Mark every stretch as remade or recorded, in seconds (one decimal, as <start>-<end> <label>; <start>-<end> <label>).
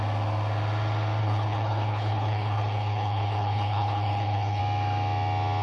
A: 0.0-1.2 recorded; 1.2-4.6 remade; 4.6-5.6 recorded